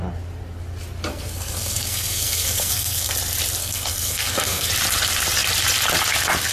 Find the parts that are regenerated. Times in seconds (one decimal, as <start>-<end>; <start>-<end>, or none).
1.1-3.1; 3.6-4.7